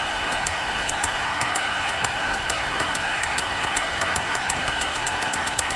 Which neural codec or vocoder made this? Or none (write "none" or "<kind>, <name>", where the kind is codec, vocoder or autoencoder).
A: codec, SNAC